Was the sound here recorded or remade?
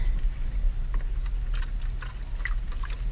recorded